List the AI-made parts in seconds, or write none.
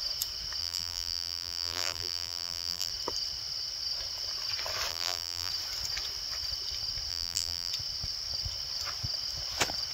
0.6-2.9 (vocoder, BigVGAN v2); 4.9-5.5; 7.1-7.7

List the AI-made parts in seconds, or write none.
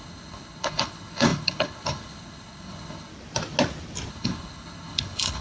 0.0-3.1 (codec, HILCodec); 4.1-5.4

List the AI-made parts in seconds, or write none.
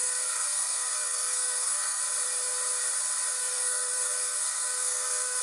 0.0-2.0 (codec, SNAC); 3.4-5.4